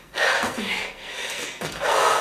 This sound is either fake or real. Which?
fake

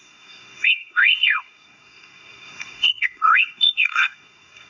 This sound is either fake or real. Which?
fake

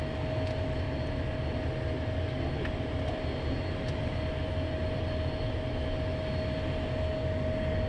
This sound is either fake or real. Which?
real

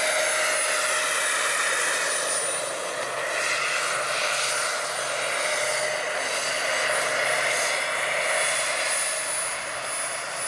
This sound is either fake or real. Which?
real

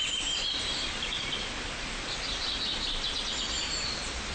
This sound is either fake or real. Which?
real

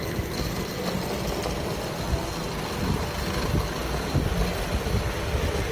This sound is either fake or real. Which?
real